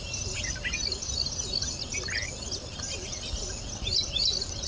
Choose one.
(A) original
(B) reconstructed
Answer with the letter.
A